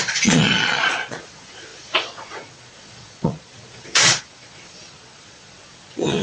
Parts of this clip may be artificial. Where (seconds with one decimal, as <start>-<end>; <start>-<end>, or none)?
0.0-6.2